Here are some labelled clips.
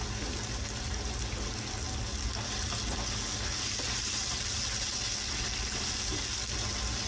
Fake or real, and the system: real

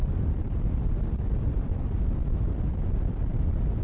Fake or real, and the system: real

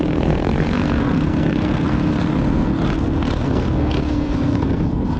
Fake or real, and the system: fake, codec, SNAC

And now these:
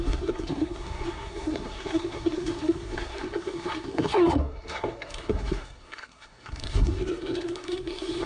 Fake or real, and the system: fake, codec, SNAC